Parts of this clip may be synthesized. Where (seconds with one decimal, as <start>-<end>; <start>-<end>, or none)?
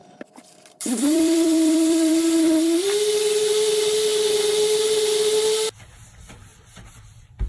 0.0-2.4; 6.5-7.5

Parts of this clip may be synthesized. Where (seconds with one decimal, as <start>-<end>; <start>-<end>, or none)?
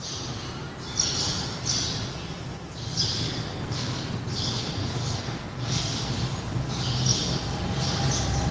3.5-4.1; 4.8-6.1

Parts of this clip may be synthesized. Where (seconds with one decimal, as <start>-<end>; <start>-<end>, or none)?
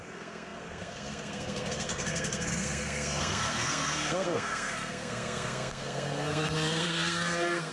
0.0-7.7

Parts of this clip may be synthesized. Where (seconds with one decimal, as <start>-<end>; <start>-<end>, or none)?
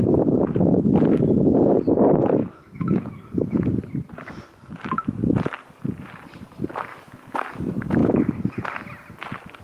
2.4-3.6; 6.9-7.4; 8.0-8.7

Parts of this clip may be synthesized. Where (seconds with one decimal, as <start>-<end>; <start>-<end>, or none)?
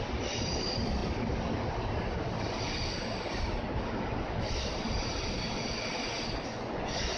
6.5-7.2